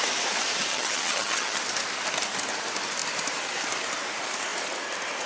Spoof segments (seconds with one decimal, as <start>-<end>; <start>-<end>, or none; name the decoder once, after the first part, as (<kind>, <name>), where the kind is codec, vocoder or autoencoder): 0.7-1.6 (vocoder, HiFi-GAN)